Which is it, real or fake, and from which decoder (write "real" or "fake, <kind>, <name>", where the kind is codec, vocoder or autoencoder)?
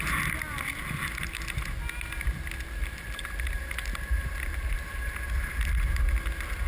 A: real